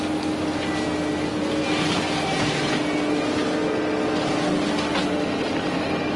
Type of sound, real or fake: real